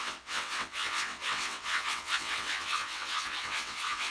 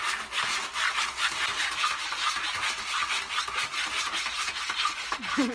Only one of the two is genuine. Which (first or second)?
second